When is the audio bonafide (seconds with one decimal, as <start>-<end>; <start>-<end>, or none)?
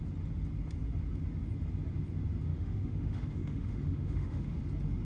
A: 0.0-2.5; 4.6-5.0